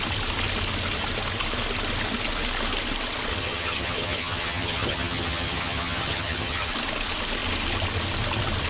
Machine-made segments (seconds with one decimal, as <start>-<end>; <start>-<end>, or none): 3.3-6.7